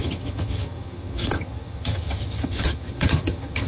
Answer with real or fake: fake